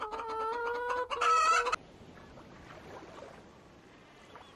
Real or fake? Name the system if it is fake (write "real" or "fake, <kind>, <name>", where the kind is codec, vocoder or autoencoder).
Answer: real